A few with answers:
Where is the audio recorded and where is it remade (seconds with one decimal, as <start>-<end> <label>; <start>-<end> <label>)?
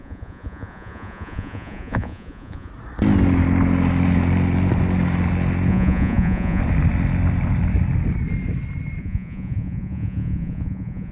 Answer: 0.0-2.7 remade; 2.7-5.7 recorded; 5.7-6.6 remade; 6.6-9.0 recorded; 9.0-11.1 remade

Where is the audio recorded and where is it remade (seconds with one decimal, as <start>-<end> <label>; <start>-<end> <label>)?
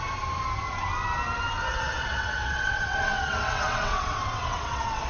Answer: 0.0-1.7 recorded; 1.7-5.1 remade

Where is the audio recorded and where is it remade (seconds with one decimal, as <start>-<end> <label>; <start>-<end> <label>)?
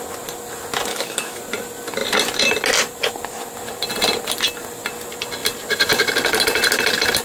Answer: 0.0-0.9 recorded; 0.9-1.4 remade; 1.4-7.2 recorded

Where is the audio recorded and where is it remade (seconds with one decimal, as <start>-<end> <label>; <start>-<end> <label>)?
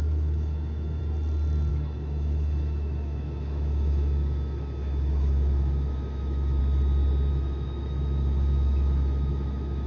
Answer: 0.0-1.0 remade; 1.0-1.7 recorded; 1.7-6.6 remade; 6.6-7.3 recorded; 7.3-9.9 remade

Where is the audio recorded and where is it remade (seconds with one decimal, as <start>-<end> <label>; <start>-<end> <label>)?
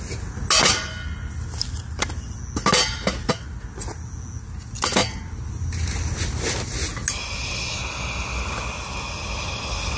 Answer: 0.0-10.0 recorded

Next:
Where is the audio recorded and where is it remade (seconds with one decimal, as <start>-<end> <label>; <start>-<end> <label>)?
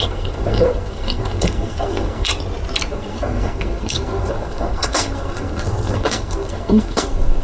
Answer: 0.0-2.3 remade; 2.3-2.9 recorded; 2.9-7.4 remade